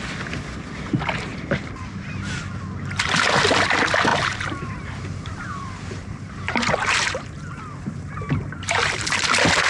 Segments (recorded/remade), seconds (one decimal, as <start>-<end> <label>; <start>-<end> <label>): 0.0-1.3 recorded; 1.3-2.4 remade; 2.4-4.1 recorded; 4.1-9.0 remade; 9.0-9.7 recorded